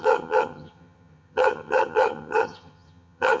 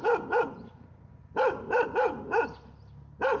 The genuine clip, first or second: second